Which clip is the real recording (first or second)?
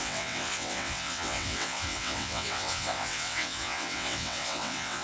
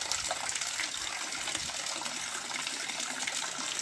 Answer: second